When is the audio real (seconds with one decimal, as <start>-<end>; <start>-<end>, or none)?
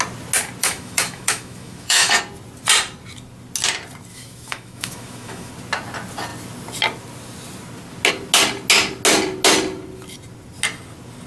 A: 0.0-0.6; 2.2-4.1; 5.5-11.3